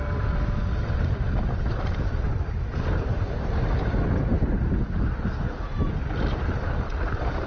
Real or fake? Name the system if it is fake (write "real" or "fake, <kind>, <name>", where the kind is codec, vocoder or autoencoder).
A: real